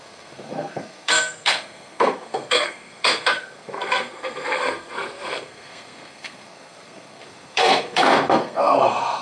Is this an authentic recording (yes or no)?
no